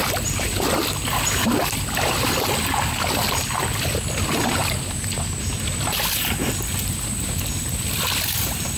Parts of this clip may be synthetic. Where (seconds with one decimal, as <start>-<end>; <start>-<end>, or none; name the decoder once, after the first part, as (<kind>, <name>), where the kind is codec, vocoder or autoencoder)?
none